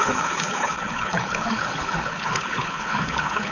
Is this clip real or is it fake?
fake